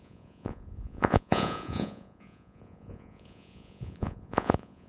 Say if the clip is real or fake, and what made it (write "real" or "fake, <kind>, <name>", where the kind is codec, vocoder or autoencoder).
fake, vocoder, Vocos